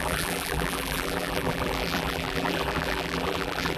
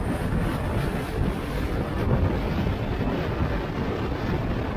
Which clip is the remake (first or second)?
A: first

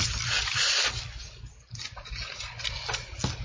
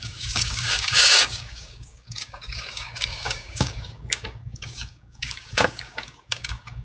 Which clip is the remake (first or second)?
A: second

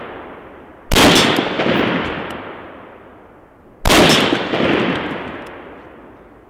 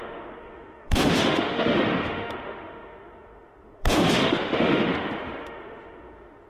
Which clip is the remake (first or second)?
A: second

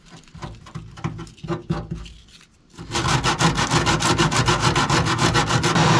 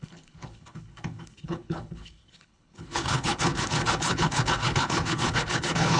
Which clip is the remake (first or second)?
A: second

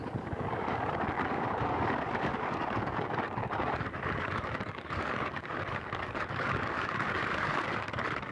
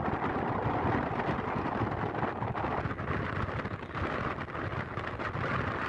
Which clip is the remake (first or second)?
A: first